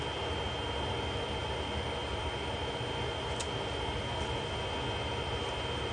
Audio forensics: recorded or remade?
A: recorded